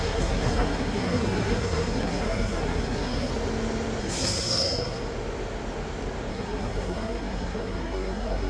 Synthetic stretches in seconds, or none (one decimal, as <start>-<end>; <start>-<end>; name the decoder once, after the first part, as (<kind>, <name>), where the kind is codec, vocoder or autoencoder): 0.0-3.3 (codec, SNAC); 4.0-5.0; 6.3-8.5